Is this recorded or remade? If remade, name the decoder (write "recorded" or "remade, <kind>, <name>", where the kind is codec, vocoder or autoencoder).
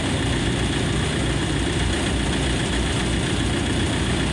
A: recorded